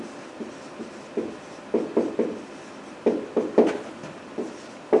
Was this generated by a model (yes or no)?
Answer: no